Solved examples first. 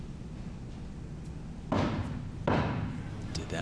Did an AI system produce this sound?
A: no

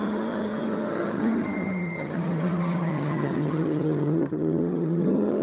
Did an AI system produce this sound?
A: yes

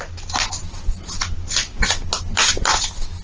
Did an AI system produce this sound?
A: no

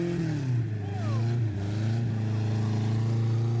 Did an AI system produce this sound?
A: no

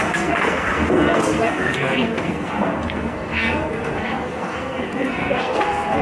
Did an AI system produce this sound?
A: yes